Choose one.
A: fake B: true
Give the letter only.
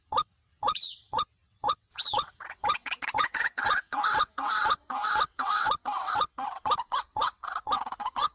A